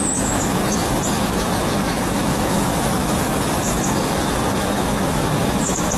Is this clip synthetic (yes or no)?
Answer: yes